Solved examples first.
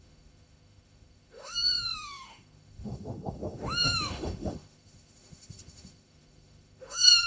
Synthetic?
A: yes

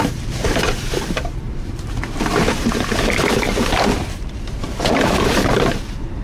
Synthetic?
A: yes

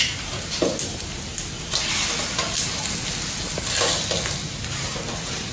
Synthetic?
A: no